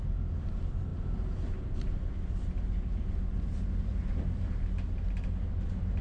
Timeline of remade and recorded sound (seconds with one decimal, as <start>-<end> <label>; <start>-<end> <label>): 0.0-0.9 recorded; 0.9-4.5 remade; 4.5-6.0 recorded